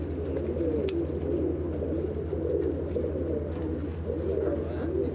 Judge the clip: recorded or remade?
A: recorded